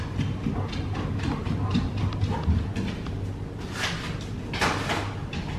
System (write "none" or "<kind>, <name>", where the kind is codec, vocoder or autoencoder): none